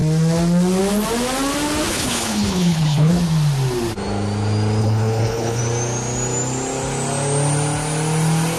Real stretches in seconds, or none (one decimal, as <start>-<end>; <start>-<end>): 0.0-1.9; 3.1-4.8; 5.6-8.6